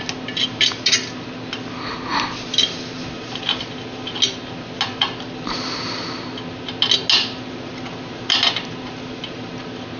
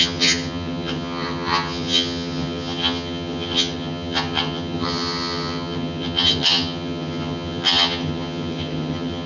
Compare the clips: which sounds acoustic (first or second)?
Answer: first